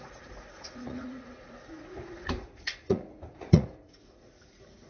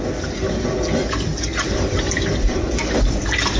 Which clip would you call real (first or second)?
second